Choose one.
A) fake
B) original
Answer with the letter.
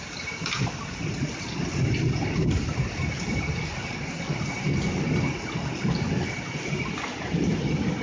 B